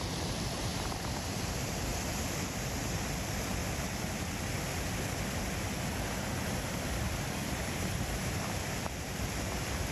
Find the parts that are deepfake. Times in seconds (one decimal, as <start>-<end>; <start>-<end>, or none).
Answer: 0.0-1.9; 2.8-3.6; 6.1-9.9